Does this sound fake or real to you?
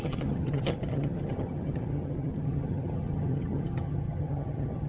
fake